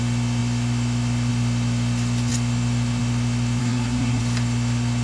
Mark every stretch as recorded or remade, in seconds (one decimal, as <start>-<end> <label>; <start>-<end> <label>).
0.0-3.6 recorded; 3.6-4.2 remade; 4.2-5.0 recorded